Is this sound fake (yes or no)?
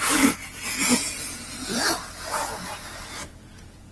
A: yes